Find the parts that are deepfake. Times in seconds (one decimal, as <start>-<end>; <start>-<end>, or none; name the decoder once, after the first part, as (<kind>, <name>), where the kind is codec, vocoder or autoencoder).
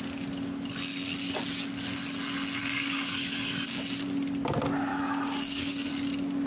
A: 2.6-3.8 (codec, DAC); 4.9-5.9